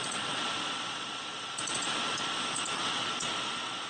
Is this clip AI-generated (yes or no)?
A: yes